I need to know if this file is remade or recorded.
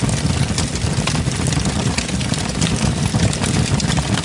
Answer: recorded